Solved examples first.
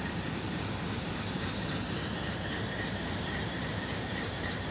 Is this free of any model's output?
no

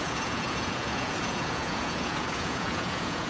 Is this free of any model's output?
no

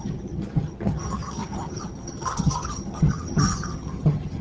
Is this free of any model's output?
no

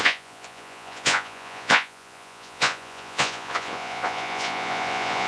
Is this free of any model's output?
no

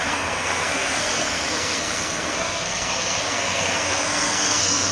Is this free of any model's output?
no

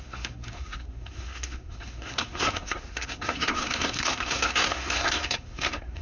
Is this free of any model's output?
no